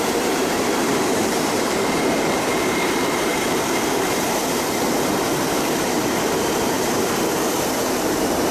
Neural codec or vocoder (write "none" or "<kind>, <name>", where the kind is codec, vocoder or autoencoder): vocoder, BigVGAN v2